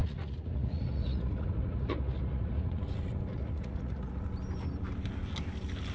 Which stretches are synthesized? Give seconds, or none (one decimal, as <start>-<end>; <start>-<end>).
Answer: 0.0-2.8; 3.3-4.1